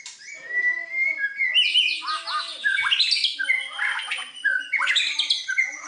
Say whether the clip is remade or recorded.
recorded